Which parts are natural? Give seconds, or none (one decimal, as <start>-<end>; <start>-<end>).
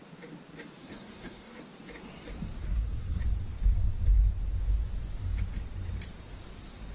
0.0-0.8; 1.6-2.6; 3.2-6.9